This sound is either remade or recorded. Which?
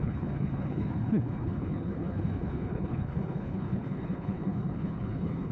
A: remade